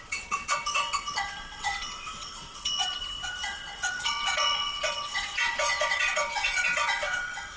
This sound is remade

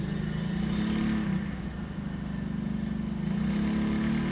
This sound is recorded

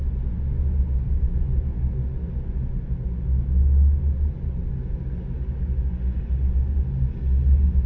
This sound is recorded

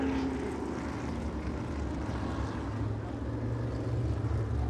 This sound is recorded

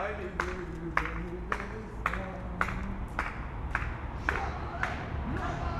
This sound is recorded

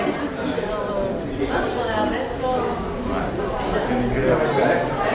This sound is recorded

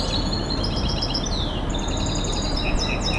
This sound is recorded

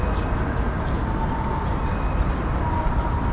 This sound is recorded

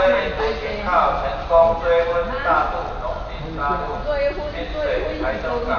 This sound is recorded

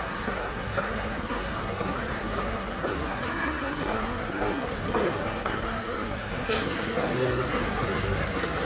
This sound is remade